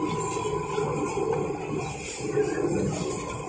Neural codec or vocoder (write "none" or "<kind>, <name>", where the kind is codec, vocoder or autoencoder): none